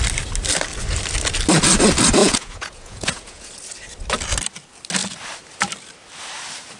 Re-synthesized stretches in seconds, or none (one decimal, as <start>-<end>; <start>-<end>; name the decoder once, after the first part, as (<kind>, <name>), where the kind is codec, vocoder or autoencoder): 2.2-3.5 (vocoder, Vocos)